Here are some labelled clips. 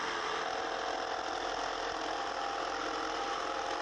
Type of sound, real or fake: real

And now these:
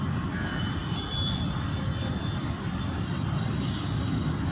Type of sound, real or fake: real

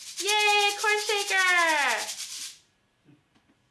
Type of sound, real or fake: real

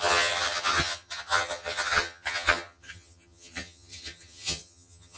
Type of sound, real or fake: fake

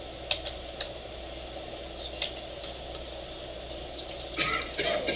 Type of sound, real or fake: real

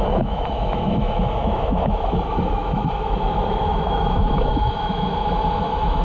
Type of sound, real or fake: fake